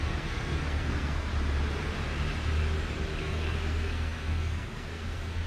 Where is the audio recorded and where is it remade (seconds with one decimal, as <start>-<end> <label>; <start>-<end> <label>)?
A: 0.0-1.3 remade; 1.3-3.2 recorded; 3.2-5.5 remade